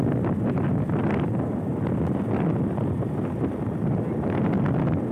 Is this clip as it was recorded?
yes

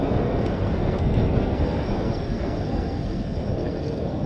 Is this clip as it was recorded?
no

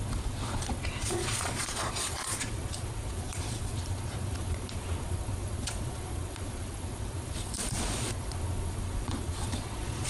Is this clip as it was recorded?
no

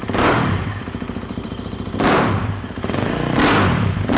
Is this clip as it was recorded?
no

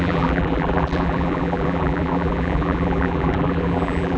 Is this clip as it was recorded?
no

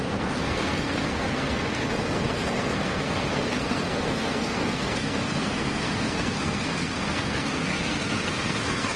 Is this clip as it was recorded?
no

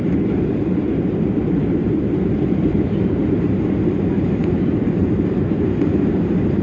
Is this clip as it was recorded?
no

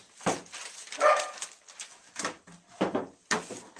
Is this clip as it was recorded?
yes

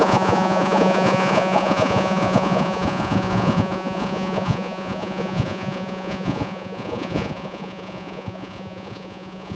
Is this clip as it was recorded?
no